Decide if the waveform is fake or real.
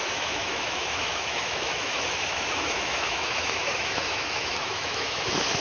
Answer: fake